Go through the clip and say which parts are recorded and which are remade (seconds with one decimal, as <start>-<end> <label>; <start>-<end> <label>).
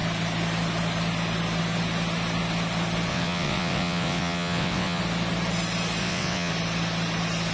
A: 0.0-3.1 recorded; 3.1-5.0 remade; 5.0-6.0 recorded; 6.0-6.5 remade; 6.5-7.5 recorded